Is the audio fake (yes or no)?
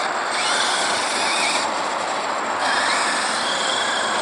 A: no